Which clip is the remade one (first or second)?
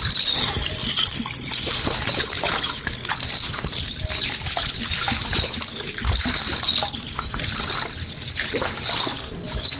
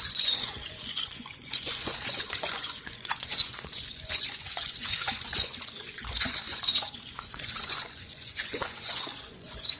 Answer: second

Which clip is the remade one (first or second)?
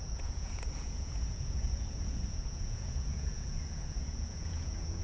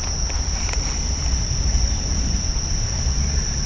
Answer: first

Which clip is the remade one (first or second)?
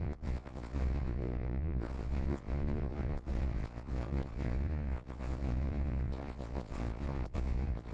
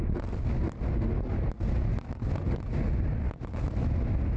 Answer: first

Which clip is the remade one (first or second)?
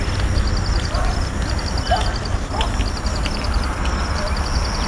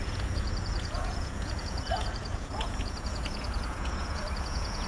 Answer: second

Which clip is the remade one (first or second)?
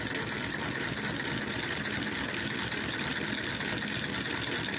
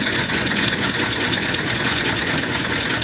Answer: second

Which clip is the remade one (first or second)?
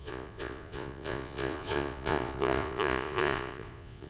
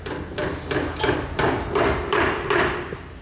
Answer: first